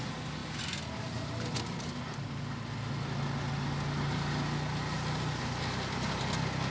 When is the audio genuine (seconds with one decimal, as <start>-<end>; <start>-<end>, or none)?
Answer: 0.0-6.7